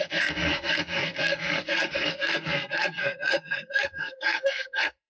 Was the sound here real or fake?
fake